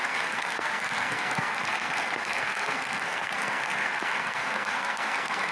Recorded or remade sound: remade